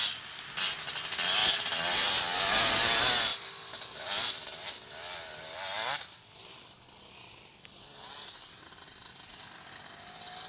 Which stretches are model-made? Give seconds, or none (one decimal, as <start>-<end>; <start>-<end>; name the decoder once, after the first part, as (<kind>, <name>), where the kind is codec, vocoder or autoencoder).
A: 1.4-2.2 (vocoder, BigVGAN v2); 3.3-8.6

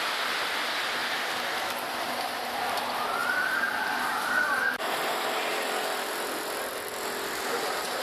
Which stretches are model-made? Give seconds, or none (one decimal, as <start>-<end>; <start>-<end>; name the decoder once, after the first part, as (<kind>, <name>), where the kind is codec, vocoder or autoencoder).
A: 3.2-5.5 (vocoder, BigVGAN v2)

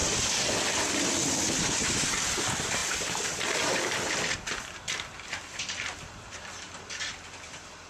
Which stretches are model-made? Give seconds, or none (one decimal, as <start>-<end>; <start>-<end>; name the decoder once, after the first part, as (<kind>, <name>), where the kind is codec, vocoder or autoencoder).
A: 0.0-2.8 (vocoder, BigVGAN v2); 4.1-7.9

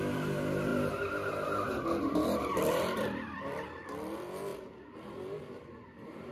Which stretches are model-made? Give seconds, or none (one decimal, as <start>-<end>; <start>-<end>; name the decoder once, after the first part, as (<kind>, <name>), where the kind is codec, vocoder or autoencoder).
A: 0.0-0.7 (vocoder, BigVGAN v2); 2.4-6.3